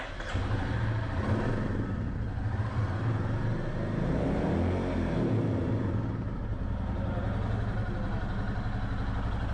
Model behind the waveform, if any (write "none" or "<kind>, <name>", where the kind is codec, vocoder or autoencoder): none